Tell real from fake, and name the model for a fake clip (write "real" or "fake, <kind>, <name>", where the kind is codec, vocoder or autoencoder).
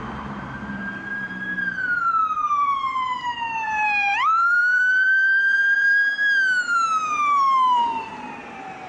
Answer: fake, vocoder, BigVGAN v2